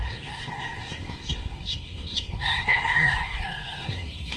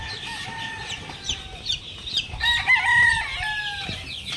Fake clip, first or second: first